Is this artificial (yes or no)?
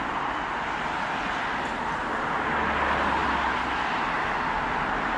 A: no